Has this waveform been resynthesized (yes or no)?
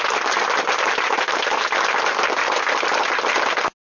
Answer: no